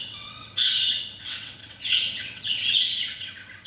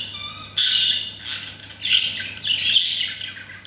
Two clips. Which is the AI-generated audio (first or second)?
first